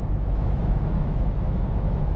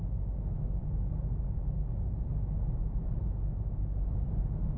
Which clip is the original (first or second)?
second